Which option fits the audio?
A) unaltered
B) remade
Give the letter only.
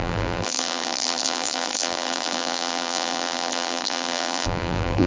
B